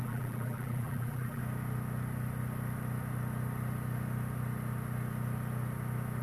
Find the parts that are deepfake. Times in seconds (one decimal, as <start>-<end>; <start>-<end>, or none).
0.0-1.4